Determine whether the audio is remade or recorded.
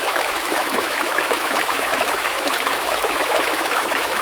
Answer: remade